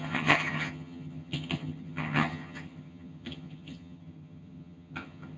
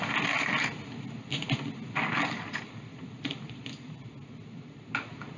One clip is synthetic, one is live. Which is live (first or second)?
second